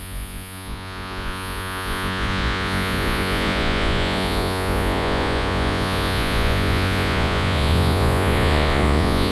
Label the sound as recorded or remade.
remade